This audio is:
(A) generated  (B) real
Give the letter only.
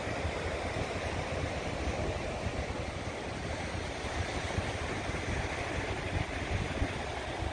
B